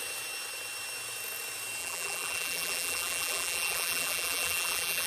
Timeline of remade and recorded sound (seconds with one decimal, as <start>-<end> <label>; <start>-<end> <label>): 0.0-1.8 recorded; 1.8-5.1 remade